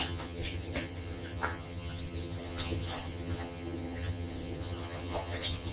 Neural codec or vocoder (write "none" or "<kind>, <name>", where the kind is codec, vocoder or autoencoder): vocoder, HiFi-GAN